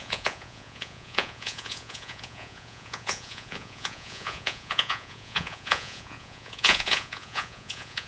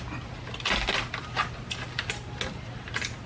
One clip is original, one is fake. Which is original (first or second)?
second